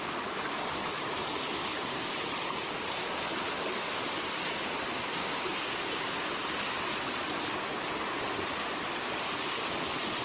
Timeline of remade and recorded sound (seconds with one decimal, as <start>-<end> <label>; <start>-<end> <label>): 0.0-1.6 recorded; 1.6-2.2 remade; 2.2-5.2 recorded; 5.2-6.0 remade; 6.0-10.2 recorded